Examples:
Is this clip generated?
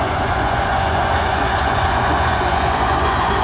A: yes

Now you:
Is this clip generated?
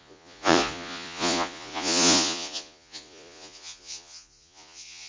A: yes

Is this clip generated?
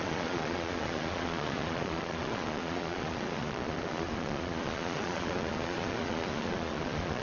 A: yes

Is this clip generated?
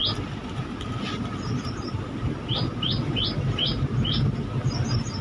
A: no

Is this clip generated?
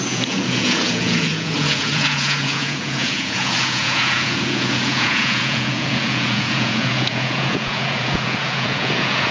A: yes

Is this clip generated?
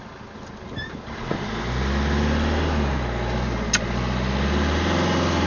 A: no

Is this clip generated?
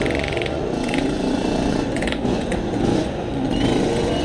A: yes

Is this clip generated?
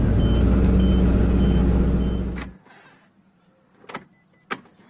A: no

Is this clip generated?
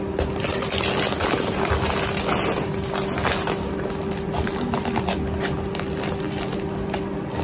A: no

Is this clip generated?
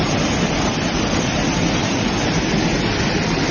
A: no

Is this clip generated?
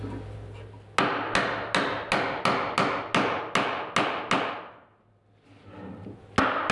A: no